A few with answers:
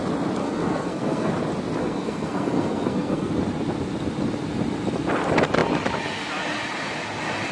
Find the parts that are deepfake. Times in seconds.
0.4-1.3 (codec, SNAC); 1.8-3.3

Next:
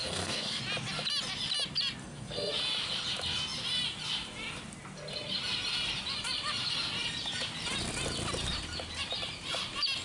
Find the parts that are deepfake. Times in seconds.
0.0-0.6 (codec, SNAC); 2.0-2.5

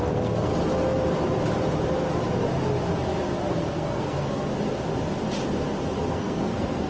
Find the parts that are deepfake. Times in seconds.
0.0-0.5 (codec, SNAC); 3.5-4.5; 6.1-6.9